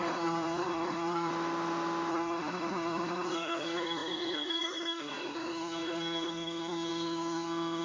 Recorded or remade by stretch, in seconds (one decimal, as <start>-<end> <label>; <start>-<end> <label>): 0.0-1.3 remade; 1.3-2.1 recorded; 2.1-7.8 remade